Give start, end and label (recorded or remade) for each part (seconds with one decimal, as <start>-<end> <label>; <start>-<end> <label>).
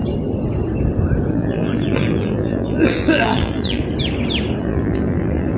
0.0-1.3 recorded; 1.3-3.8 remade; 3.8-4.6 recorded; 4.6-5.6 remade